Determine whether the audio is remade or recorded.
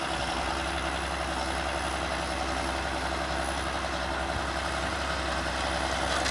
recorded